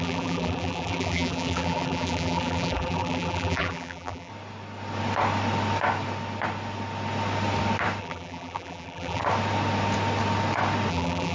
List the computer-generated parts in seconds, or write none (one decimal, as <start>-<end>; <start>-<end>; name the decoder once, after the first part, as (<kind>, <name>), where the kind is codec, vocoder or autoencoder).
0.0-4.3 (vocoder, BigVGAN v2); 8.0-9.2; 10.9-11.3